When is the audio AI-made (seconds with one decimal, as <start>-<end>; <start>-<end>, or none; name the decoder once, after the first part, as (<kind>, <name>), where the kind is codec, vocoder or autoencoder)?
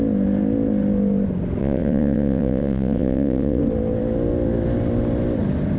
1.6-3.6 (vocoder, WaveNeXt)